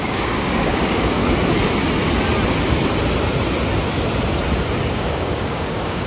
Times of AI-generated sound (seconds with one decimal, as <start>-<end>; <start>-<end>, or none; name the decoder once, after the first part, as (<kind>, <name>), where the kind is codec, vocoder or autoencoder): 0.0-1.2 (codec, DAC); 4.9-6.1